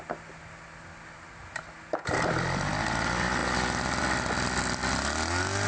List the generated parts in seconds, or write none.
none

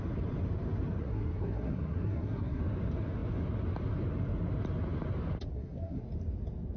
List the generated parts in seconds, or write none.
1.0-2.6 (codec, SNAC); 5.5-6.0

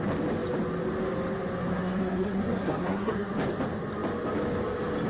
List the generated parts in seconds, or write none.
1.7-3.3 (codec, SNAC)

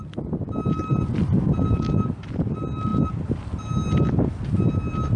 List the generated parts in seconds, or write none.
none

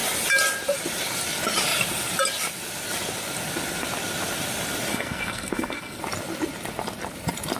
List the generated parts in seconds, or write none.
4.9-6.0 (codec, SNAC)

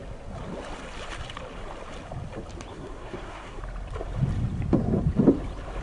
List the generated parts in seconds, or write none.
2.7-3.6 (codec, SNAC)